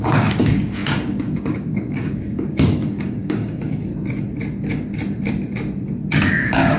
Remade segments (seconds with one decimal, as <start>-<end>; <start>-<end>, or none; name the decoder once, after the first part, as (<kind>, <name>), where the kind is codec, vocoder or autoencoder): 0.0-3.9 (codec, DAC); 6.3-6.8